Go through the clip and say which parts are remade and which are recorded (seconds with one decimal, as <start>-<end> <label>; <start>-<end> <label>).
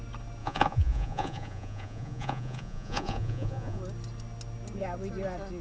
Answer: 0.0-0.4 recorded; 0.4-3.8 remade; 3.8-5.6 recorded